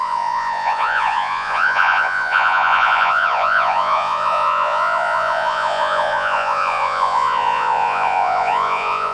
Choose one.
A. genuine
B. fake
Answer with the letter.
B